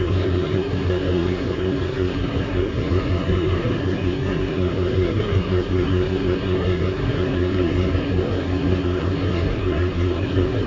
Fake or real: fake